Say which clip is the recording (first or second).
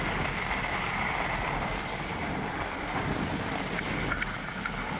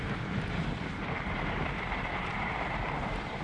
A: first